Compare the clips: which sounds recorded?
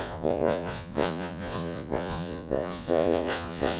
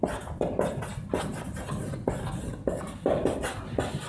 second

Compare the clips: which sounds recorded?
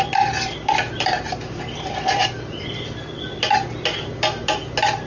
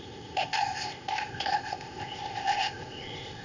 first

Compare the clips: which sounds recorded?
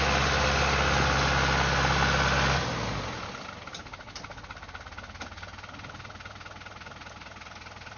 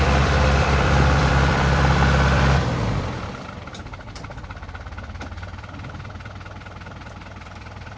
first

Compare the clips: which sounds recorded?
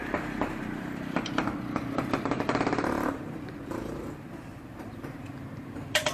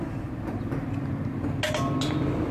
second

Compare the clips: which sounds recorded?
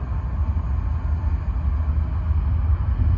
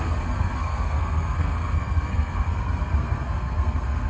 first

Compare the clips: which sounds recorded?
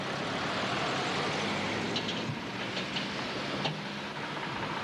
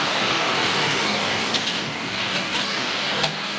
first